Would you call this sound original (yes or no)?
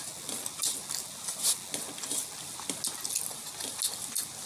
yes